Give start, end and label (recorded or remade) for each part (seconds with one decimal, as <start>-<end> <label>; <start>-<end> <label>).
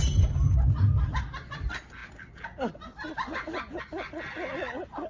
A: 0.0-5.1 recorded